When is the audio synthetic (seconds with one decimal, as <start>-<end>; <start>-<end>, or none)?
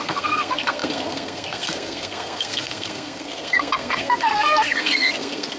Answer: 0.0-5.6